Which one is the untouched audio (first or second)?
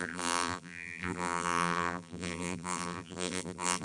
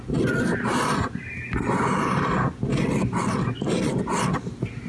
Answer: second